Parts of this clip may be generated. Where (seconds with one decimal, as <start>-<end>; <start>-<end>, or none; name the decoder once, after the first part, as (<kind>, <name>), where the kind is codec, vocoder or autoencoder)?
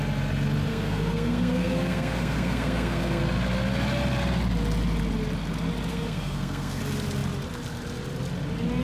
0.7-3.2 (codec, SNAC); 5.9-6.8